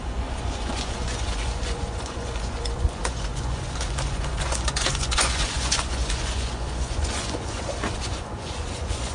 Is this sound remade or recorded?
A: remade